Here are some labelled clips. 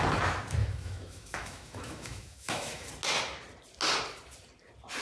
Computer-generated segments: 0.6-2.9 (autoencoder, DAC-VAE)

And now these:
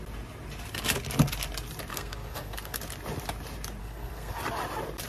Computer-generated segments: 1.9-2.8 (codec, SNAC); 3.8-4.4